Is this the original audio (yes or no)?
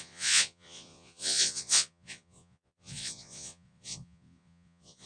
no